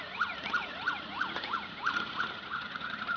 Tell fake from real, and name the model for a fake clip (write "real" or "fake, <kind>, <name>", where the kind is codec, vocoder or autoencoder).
fake, vocoder, Vocos